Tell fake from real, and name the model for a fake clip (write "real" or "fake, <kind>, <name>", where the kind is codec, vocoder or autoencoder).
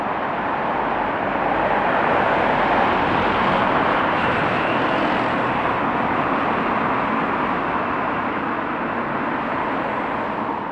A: real